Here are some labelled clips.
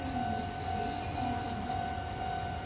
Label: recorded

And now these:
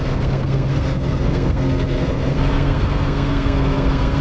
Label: remade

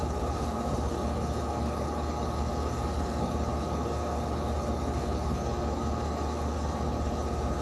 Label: remade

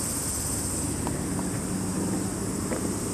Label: recorded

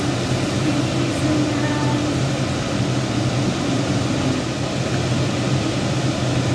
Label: recorded